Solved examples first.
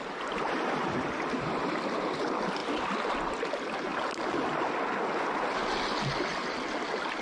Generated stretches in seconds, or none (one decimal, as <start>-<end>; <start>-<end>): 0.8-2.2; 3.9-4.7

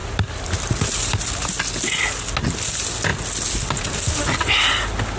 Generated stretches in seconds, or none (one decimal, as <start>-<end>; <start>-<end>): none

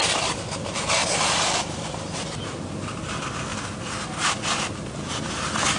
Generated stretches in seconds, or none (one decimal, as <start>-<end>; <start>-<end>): 3.5-4.5

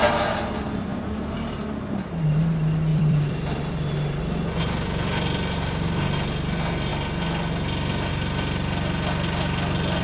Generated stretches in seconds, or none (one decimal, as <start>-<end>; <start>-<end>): 2.9-4.2